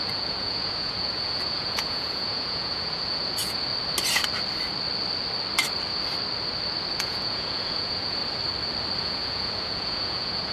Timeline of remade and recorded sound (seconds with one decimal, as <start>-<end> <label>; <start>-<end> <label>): 0.0-3.7 remade; 3.7-6.9 recorded; 6.9-8.2 remade; 8.2-9.0 recorded; 9.0-10.5 remade